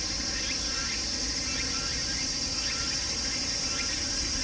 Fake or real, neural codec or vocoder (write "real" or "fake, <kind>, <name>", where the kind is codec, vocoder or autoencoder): real